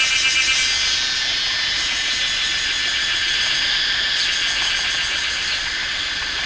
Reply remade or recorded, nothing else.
recorded